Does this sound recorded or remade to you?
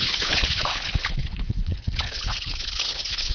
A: remade